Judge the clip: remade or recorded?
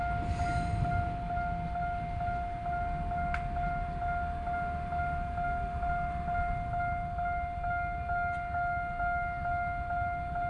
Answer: recorded